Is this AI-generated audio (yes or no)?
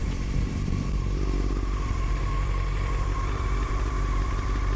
yes